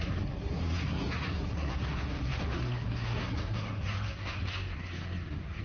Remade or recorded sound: remade